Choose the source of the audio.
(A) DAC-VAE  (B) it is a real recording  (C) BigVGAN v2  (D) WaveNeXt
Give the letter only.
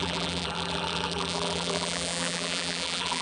C